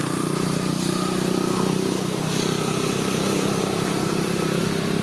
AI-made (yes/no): no